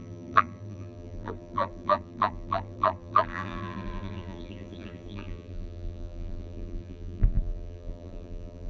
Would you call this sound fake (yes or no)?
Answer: yes